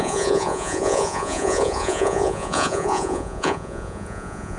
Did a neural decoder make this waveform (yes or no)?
yes